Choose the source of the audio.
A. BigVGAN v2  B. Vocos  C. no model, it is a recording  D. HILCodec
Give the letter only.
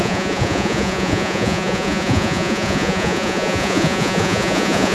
B